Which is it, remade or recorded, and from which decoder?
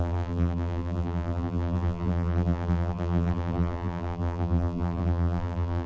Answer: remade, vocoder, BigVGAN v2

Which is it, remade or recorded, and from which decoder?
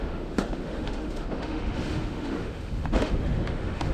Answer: remade, autoencoder, DAC-VAE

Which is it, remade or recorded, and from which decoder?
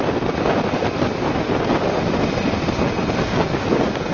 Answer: recorded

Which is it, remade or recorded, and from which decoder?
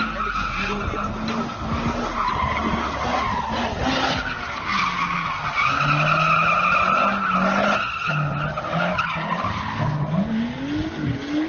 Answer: recorded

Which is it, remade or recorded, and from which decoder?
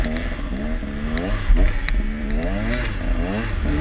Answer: recorded